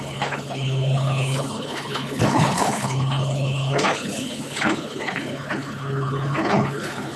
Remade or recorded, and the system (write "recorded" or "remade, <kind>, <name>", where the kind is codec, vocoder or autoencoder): remade, codec, HILCodec